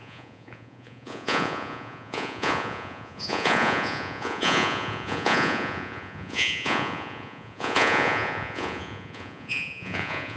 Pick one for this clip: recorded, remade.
remade